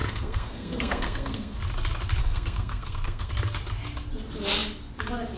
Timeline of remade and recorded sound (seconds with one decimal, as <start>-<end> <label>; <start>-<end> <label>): 0.0-1.6 remade; 1.6-2.2 recorded; 2.2-3.3 remade; 3.3-5.4 recorded